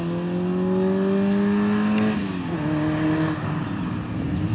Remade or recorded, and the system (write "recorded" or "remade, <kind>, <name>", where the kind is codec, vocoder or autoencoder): recorded